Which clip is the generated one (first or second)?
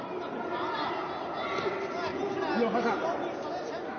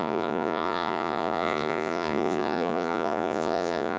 second